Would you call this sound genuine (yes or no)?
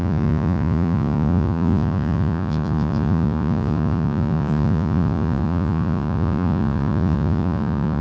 no